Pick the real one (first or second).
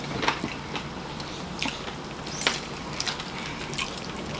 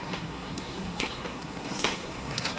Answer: first